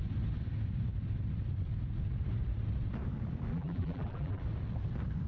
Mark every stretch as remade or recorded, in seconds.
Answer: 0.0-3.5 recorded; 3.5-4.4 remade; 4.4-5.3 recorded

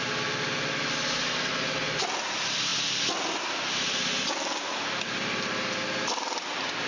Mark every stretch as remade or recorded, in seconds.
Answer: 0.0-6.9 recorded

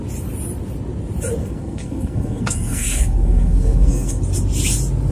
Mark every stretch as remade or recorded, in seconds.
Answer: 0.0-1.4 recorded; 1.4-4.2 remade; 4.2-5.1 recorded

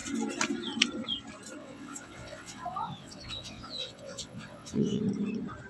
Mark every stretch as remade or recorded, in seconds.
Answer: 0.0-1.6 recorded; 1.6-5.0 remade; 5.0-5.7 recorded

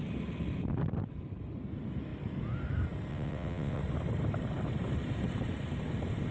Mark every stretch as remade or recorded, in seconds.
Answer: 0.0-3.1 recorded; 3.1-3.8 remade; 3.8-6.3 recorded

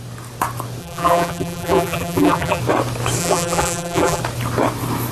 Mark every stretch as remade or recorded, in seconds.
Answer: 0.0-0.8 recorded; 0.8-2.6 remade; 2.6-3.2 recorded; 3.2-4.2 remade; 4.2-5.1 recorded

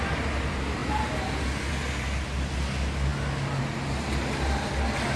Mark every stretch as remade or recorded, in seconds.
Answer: 0.0-5.2 recorded

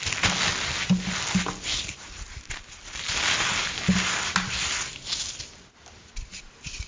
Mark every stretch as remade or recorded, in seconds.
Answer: 0.0-1.8 recorded; 1.8-3.2 remade; 3.2-6.9 recorded